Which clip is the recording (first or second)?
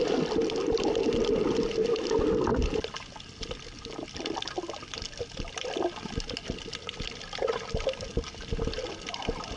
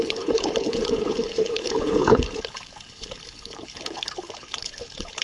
first